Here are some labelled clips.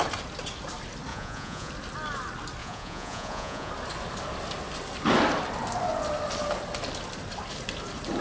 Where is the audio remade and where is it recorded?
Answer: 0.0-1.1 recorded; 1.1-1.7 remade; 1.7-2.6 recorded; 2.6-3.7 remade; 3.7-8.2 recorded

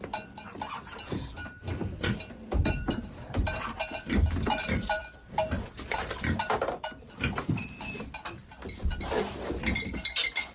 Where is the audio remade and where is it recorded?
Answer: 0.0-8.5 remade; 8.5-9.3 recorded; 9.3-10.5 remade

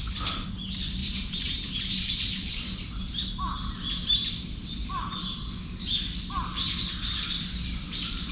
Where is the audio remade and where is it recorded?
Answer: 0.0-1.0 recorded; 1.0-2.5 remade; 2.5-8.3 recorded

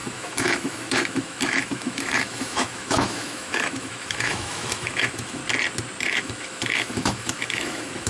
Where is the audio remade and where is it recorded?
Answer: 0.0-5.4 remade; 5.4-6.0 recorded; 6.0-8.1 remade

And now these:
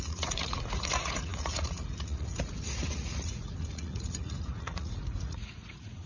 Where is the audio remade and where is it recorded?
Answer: 0.0-6.1 remade